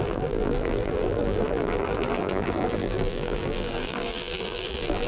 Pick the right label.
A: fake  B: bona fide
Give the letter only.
A